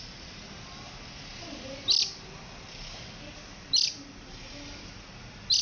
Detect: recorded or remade recorded